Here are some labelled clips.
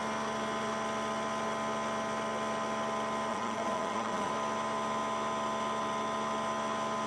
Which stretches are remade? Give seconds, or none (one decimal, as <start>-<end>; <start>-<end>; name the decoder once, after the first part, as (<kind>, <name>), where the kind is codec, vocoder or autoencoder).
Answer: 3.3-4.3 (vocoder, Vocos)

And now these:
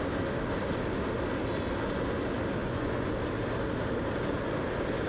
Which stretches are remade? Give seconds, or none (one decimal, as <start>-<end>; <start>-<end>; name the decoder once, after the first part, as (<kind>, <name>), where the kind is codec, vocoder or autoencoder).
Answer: 2.6-3.1 (vocoder, Vocos)

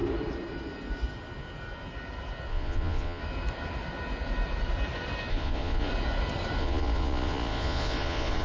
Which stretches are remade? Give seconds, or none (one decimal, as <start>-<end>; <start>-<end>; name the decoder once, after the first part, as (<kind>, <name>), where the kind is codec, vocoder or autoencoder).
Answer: 2.5-3.2 (vocoder, Vocos); 5.3-5.9; 6.6-8.4

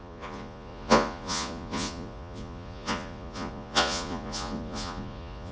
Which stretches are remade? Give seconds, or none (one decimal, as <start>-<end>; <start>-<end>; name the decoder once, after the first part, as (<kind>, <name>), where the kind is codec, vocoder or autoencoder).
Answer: 0.0-5.5 (vocoder, Vocos)

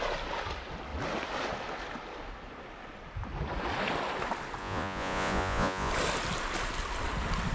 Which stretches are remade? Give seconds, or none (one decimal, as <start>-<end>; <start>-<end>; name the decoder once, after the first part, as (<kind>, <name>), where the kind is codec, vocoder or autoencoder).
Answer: 4.6-5.9 (vocoder, Vocos)

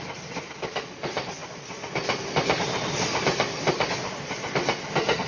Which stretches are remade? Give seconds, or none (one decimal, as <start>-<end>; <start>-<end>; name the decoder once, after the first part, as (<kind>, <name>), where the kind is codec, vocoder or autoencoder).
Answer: none

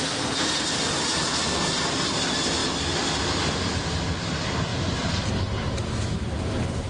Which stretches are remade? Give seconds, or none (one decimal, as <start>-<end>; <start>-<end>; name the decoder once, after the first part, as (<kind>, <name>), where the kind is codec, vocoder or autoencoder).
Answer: none

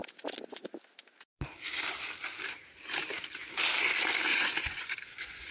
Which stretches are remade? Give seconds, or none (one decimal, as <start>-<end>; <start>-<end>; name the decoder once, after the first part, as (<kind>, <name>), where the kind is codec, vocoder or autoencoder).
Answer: 4.3-5.5 (vocoder, Vocos)